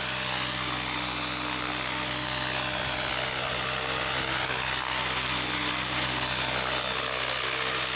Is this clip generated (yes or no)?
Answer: no